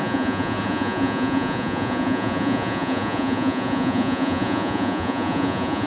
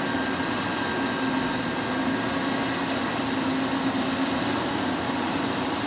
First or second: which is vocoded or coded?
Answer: first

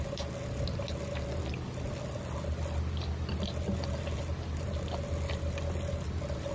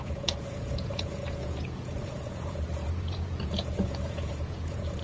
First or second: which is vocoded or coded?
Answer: second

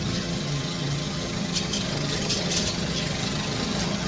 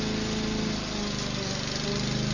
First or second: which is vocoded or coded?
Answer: first